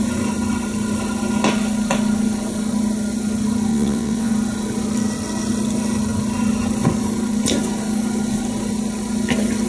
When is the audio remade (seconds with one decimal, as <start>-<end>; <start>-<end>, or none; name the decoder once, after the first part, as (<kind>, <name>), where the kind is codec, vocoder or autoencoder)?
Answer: 3.7-4.3 (vocoder, WaveNeXt)